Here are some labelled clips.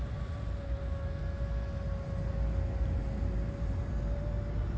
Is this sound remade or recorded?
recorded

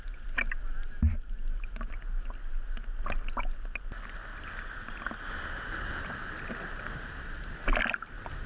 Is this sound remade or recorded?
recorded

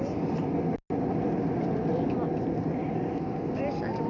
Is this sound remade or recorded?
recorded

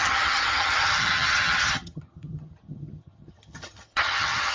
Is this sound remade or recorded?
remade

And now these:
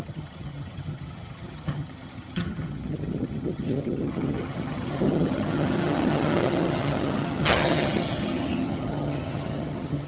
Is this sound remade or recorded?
remade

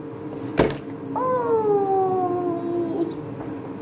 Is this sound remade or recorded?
recorded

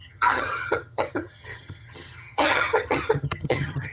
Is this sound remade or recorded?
remade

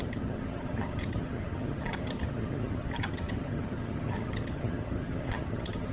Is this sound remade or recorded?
remade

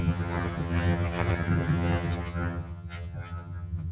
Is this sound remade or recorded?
remade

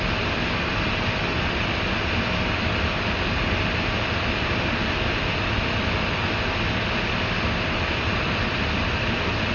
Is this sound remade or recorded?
recorded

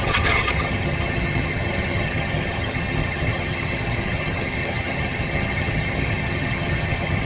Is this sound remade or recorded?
remade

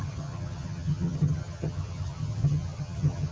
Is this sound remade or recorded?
remade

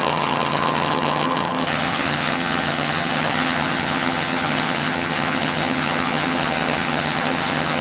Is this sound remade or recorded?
remade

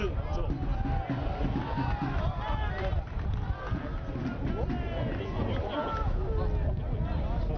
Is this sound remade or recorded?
recorded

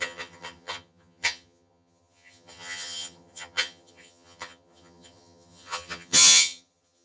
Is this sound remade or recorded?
remade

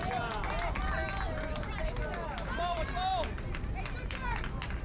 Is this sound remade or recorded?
recorded